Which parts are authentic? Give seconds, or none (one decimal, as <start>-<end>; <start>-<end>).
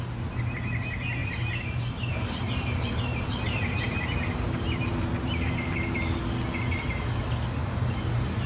0.0-1.2; 6.2-7.6